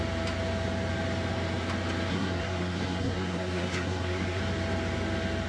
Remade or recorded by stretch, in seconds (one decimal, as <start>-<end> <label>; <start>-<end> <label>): 0.0-2.1 recorded; 2.1-4.4 remade; 4.4-5.5 recorded